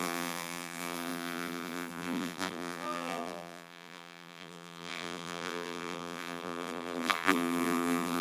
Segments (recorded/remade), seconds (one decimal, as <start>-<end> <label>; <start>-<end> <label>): 0.0-8.2 remade